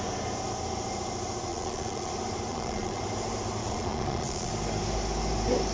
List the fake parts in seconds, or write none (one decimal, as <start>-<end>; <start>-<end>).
1.5-2.1; 2.5-3.0; 3.6-4.5